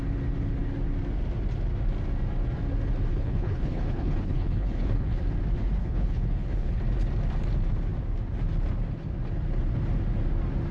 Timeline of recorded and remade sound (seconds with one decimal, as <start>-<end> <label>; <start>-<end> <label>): 0.0-3.1 recorded; 3.1-5.2 remade; 5.2-5.8 recorded; 5.8-6.8 remade; 6.8-10.7 recorded